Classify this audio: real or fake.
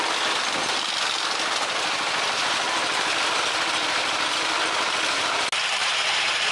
real